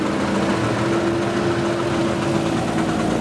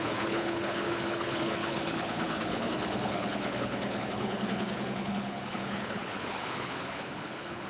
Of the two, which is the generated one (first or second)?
second